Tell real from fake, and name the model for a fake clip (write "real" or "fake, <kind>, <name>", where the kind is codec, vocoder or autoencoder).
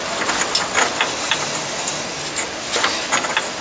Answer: real